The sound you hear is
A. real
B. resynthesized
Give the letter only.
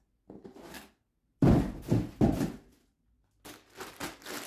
A